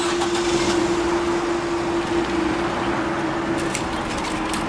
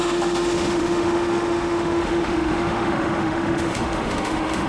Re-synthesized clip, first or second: second